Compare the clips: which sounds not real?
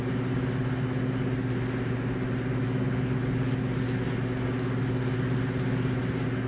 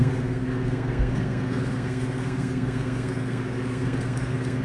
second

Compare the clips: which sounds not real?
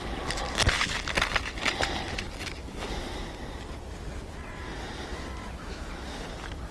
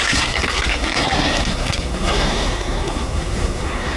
second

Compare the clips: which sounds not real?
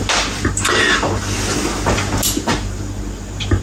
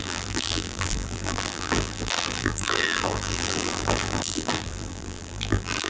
second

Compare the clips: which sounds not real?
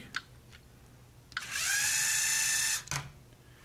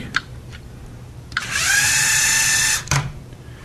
second